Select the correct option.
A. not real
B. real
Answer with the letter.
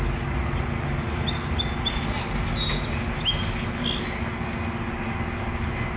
B